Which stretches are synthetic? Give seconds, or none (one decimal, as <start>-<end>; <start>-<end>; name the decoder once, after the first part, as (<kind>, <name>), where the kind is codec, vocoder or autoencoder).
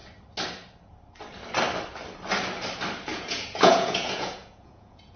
3.1-5.2 (vocoder, Vocos)